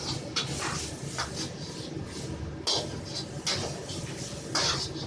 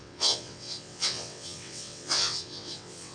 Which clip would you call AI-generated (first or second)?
second